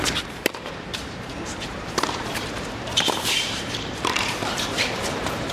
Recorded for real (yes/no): no